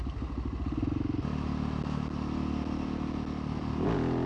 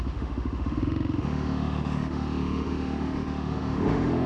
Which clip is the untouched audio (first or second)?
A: first